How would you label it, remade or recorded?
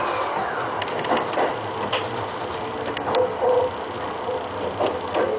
recorded